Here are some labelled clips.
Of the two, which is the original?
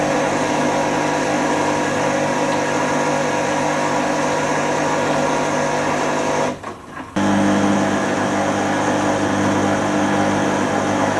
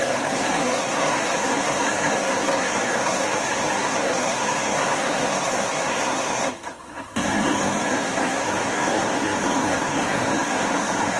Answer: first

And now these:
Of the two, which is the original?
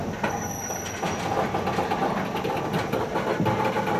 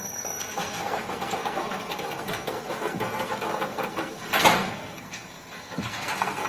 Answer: first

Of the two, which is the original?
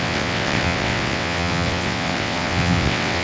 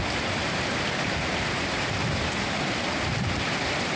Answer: second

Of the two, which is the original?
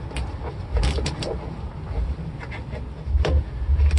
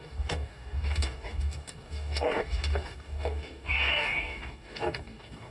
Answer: first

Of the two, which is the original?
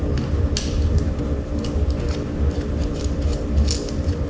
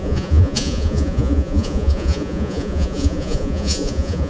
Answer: first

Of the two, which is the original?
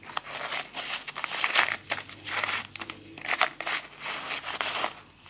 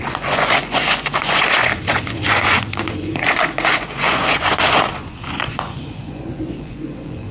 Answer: first